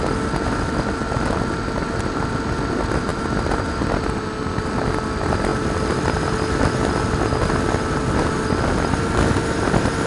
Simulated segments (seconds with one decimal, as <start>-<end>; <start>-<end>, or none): none